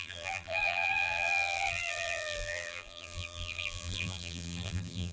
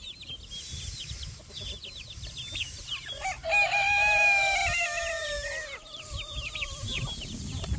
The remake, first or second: first